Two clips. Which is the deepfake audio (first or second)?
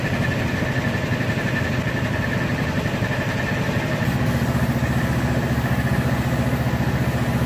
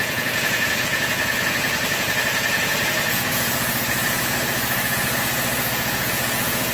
second